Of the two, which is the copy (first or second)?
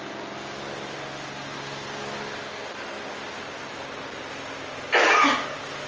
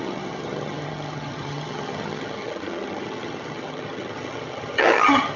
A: second